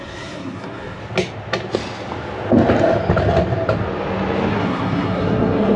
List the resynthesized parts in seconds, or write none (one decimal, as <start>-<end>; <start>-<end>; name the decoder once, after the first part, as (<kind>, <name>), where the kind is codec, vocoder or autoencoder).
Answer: 0.0-1.0 (codec, SNAC); 4.5-5.8